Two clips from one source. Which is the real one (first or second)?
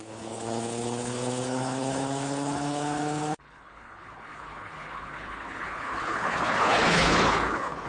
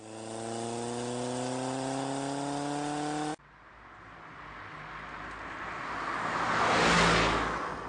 second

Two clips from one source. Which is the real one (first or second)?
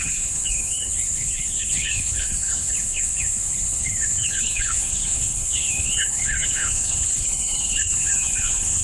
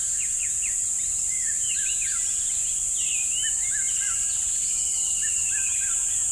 second